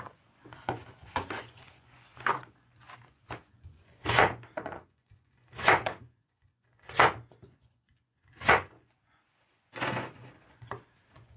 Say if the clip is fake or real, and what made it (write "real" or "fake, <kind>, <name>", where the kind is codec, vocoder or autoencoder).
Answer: fake, vocoder, Vocos